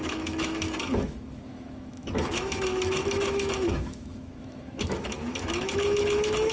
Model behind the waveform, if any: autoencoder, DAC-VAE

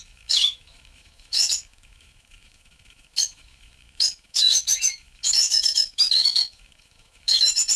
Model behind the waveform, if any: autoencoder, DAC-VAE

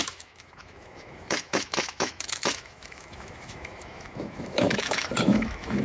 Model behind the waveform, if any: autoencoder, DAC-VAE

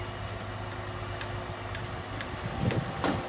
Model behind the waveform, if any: none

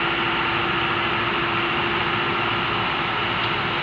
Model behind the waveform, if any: none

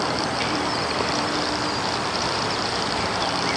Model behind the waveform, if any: none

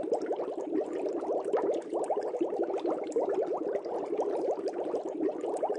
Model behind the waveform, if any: none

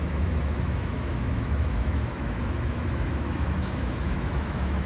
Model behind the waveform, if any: autoencoder, DAC-VAE